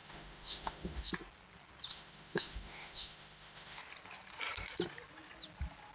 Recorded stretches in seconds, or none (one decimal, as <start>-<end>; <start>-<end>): 1.1-1.9; 3.8-5.9